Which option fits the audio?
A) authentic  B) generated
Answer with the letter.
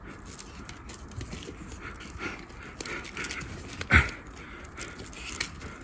A